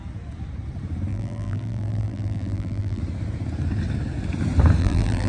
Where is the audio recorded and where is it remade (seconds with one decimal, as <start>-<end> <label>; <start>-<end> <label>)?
0.0-1.1 recorded; 1.1-3.0 remade; 3.0-4.8 recorded; 4.8-5.3 remade